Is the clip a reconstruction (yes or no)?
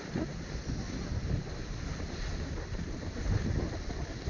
no